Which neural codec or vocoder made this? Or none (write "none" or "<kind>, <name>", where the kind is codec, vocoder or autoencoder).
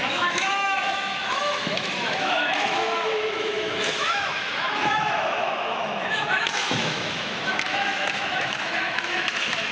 autoencoder, DAC-VAE